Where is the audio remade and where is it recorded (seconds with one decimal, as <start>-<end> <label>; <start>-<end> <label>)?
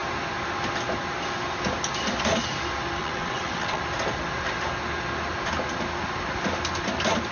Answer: 0.0-3.0 recorded; 3.0-3.8 remade; 3.8-7.3 recorded